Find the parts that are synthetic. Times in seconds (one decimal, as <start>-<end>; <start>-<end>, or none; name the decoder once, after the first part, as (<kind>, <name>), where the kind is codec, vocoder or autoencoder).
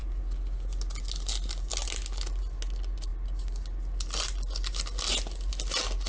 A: none